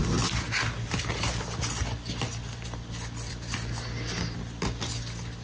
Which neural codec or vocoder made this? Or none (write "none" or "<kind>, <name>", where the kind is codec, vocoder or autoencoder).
none